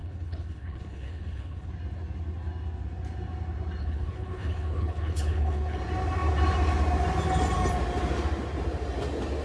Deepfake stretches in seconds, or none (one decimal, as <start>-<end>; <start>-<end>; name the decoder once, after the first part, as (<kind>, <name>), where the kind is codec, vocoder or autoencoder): 0.0-1.7 (codec, HILCodec); 3.8-5.8